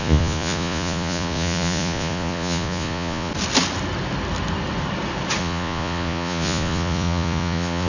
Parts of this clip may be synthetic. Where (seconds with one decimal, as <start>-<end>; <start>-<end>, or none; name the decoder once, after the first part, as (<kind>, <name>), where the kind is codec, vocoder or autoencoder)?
0.0-3.3 (vocoder, Vocos); 5.4-7.9